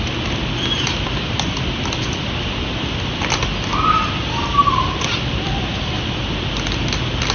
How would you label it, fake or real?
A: real